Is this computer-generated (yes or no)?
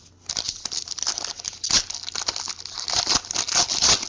no